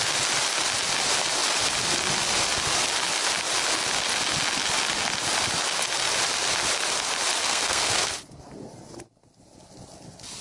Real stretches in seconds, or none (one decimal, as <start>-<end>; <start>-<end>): 0.0-7.4; 8.1-10.4